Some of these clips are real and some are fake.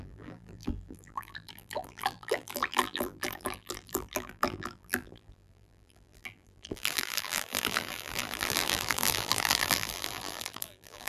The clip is fake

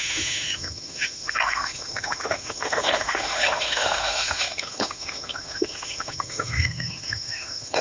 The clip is fake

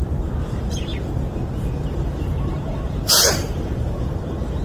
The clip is fake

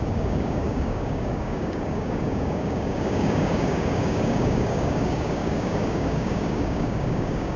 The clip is fake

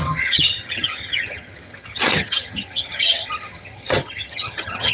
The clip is fake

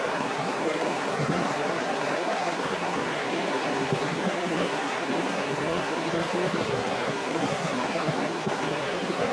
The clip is fake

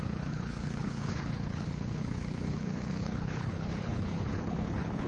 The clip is fake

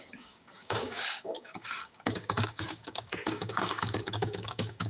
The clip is fake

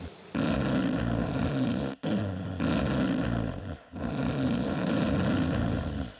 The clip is real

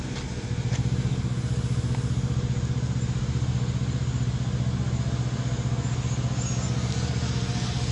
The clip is real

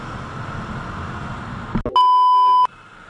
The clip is real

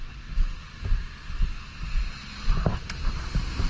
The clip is real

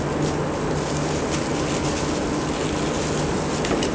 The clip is real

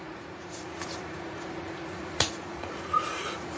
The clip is fake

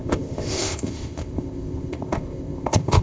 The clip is fake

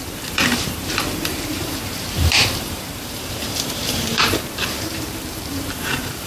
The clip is fake